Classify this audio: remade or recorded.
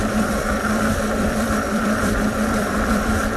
remade